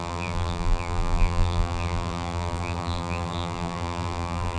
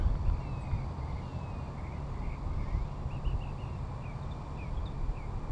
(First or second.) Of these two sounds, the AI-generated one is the first